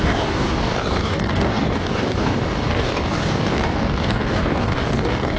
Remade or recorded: remade